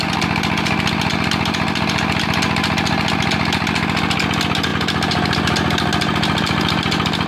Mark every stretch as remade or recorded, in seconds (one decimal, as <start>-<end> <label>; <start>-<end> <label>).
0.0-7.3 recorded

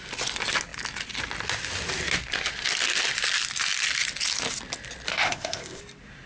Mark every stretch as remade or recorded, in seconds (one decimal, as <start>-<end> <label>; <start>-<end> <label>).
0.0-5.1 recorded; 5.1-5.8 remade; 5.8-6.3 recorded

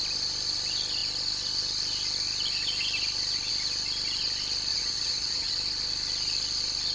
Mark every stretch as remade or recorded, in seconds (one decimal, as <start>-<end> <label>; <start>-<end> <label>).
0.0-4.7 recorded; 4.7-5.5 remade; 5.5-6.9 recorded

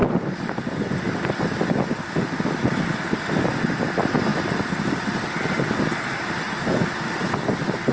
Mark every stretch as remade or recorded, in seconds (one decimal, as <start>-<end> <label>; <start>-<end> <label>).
0.0-7.9 recorded

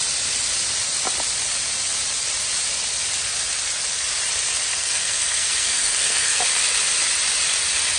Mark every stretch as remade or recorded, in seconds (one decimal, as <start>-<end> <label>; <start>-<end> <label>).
0.0-4.7 recorded; 4.7-6.4 remade; 6.4-8.0 recorded